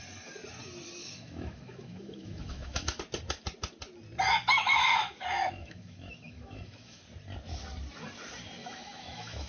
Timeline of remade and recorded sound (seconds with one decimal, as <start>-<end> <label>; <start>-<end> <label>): 0.0-1.0 recorded; 1.0-3.0 remade; 3.0-4.6 recorded; 4.6-7.0 remade; 7.0-8.6 recorded; 8.6-9.5 remade